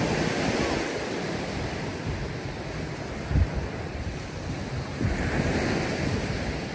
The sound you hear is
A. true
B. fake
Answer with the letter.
A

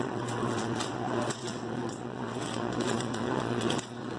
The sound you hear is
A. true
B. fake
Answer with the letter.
B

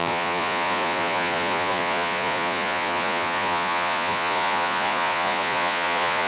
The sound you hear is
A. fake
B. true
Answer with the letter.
A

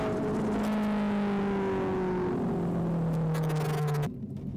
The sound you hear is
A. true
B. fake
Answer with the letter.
A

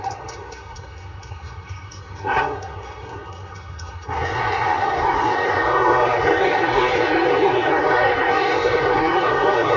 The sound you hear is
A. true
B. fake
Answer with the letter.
B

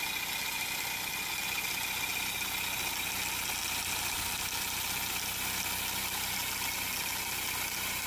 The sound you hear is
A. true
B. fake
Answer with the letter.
A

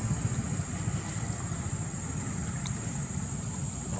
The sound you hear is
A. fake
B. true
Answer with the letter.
B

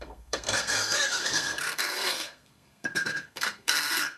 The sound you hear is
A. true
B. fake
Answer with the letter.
B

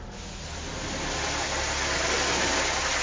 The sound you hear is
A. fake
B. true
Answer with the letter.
B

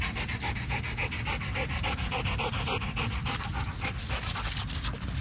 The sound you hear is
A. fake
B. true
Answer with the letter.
B